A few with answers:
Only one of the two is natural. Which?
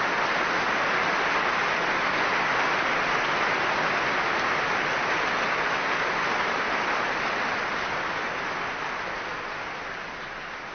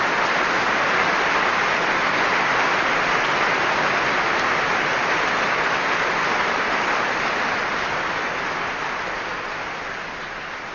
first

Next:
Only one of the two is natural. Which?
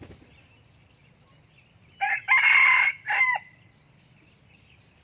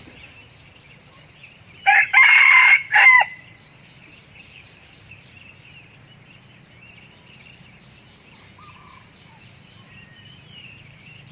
first